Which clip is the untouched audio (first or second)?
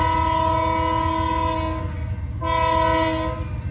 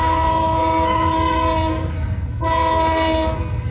first